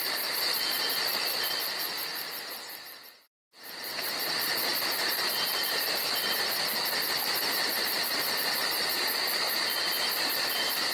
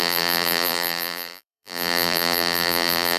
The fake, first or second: second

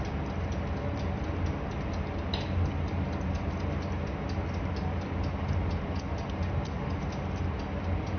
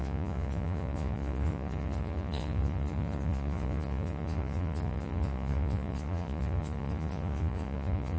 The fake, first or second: second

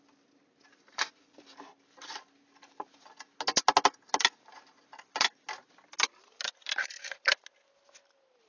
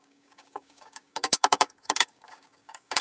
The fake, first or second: second